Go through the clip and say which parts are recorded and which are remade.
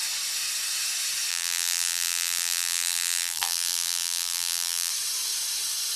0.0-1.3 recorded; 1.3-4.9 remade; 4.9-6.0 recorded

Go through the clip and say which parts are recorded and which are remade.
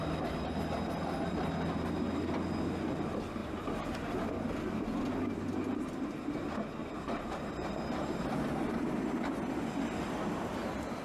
0.0-3.4 recorded; 3.4-4.1 remade; 4.1-6.8 recorded; 6.8-8.2 remade; 8.2-11.0 recorded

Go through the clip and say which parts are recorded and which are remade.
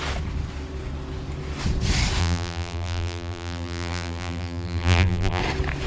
0.0-2.2 recorded; 2.2-5.4 remade; 5.4-5.9 recorded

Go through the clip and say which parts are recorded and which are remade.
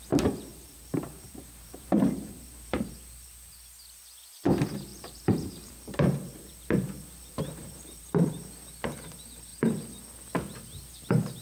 0.0-0.5 recorded; 0.5-2.9 remade; 2.9-4.9 recorded; 4.9-8.3 remade; 8.3-11.4 recorded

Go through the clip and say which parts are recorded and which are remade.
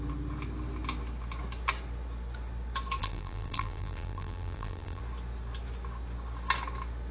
0.0-3.0 recorded; 3.0-5.0 remade; 5.0-7.1 recorded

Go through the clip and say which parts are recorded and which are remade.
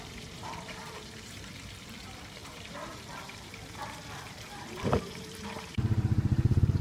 0.0-6.8 remade